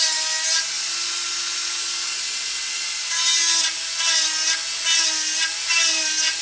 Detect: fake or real real